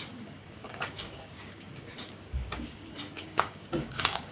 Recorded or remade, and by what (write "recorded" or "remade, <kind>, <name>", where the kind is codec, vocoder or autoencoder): remade, codec, DAC